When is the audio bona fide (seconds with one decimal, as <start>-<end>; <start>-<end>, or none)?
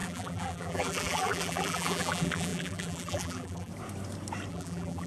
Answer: 3.7-4.5